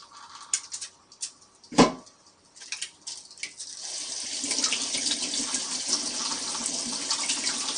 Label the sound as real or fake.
real